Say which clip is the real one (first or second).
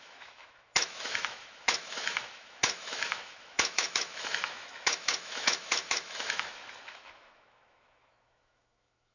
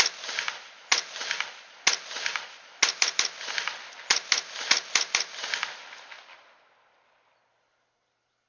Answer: second